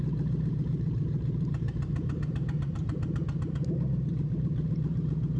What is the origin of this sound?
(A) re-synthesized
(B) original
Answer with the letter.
A